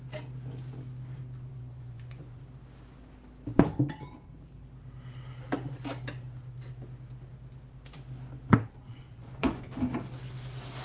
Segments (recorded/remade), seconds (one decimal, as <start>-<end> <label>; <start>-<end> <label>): 0.0-1.5 recorded; 1.5-2.4 remade; 2.4-8.9 recorded; 8.9-9.6 remade; 9.6-10.8 recorded